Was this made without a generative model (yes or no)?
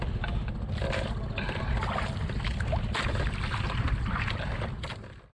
yes